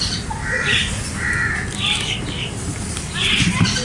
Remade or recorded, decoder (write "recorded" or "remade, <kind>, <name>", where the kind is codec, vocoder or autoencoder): recorded